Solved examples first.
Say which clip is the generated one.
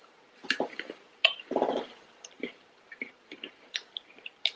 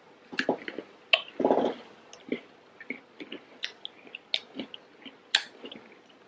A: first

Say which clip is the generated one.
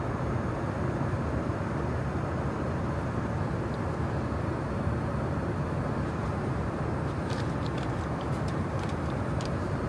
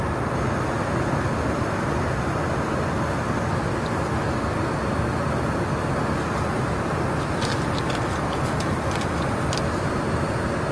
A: first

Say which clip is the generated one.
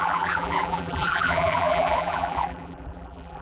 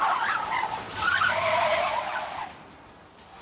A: first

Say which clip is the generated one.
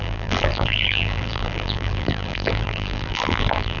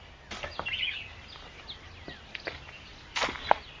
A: first